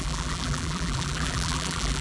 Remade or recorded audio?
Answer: remade